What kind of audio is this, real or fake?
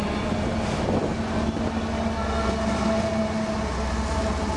real